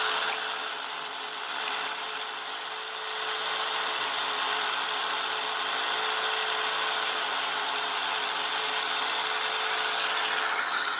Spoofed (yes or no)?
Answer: no